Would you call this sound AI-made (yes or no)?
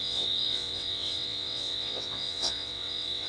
yes